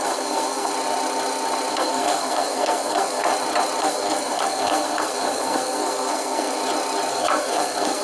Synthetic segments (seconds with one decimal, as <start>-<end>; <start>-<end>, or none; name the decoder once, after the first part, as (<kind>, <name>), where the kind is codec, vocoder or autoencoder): 0.0-0.7 (codec, SNAC); 1.7-3.3; 3.8-6.6; 7.1-8.0